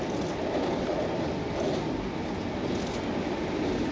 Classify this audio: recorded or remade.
recorded